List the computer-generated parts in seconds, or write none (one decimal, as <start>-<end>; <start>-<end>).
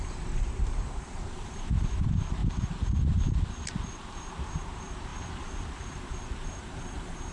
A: 0.0-2.4; 3.9-7.3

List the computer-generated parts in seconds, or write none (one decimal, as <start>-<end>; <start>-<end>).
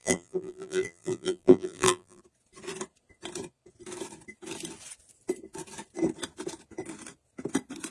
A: 0.0-2.2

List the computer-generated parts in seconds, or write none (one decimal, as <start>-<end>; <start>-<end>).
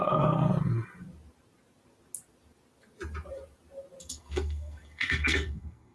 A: 0.0-0.5; 4.0-5.9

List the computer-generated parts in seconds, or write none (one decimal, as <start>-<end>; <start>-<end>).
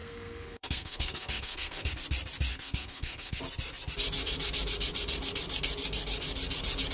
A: 0.0-1.9; 2.5-3.4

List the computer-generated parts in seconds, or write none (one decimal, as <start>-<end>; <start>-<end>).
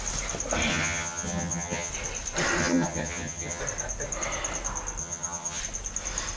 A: 0.7-1.9; 2.6-3.6; 5.0-5.6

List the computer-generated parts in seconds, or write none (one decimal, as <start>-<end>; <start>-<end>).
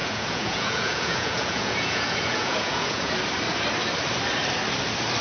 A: 0.0-3.1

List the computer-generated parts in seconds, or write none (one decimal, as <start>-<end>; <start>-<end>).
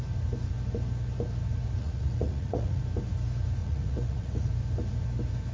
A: 1.8-2.8; 3.6-4.5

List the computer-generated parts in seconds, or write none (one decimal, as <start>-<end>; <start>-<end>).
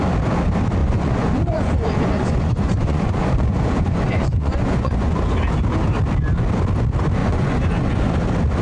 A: 0.8-5.2; 7.2-8.1